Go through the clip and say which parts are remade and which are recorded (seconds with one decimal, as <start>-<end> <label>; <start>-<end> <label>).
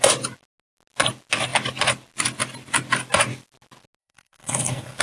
0.0-4.0 recorded; 4.0-5.0 remade